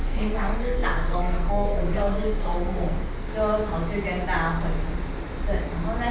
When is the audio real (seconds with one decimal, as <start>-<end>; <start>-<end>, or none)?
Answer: 3.3-6.1